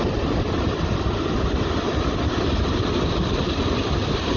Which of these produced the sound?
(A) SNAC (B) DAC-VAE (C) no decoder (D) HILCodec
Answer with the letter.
C